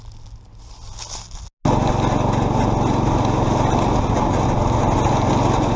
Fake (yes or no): no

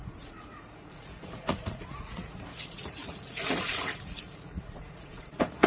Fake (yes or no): yes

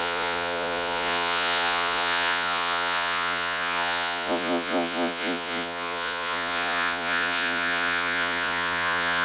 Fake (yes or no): yes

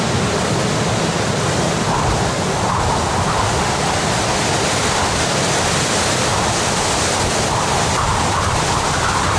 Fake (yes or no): no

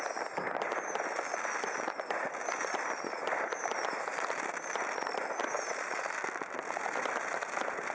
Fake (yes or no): yes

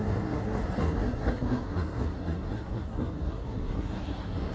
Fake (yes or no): yes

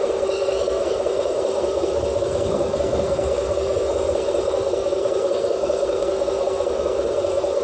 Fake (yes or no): yes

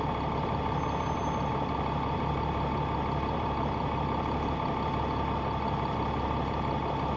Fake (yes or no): no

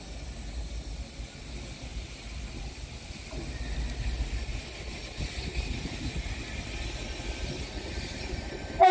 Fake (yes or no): no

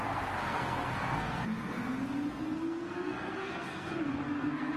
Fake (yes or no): yes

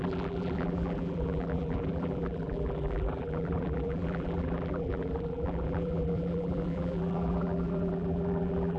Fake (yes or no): yes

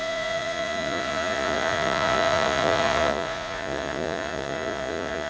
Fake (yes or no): yes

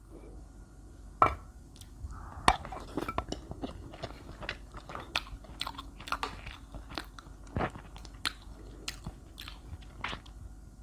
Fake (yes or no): no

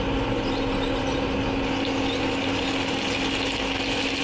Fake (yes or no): no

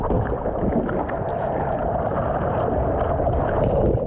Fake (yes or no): no